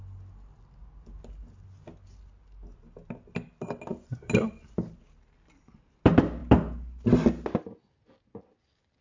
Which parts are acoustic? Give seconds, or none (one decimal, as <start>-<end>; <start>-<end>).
0.0-9.0